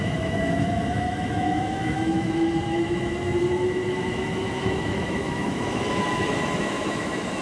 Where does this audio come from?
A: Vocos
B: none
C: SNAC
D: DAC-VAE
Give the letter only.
D